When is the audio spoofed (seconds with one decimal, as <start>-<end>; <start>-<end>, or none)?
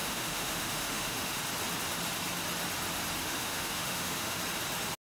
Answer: 0.0-1.4; 3.2-4.4